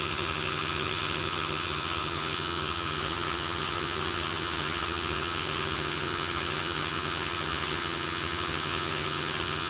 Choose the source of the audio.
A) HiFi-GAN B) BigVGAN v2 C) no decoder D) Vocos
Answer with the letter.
A